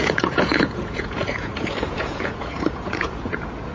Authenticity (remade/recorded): remade